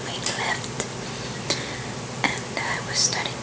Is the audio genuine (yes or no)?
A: yes